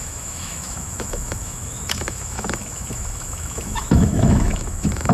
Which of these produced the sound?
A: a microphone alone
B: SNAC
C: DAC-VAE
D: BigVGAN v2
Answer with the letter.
C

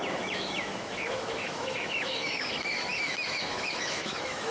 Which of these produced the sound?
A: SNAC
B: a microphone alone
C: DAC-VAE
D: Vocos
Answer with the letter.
C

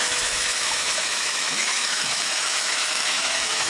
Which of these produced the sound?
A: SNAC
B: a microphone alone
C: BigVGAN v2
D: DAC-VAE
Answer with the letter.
D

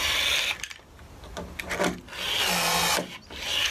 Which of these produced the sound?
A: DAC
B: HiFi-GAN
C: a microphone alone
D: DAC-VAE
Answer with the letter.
C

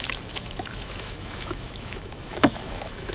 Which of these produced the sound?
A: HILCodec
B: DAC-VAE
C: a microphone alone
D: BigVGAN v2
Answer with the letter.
B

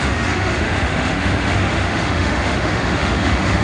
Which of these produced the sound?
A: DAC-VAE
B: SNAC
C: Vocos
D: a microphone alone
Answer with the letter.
A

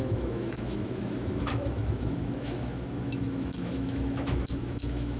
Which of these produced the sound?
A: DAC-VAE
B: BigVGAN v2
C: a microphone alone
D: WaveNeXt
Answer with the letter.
A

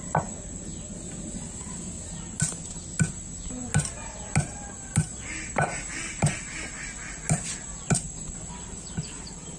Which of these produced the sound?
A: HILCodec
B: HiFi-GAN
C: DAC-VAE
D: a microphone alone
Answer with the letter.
D